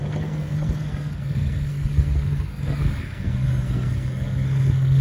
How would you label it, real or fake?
fake